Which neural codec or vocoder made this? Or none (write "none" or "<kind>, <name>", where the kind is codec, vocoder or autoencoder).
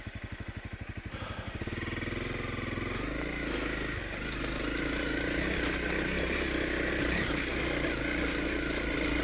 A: none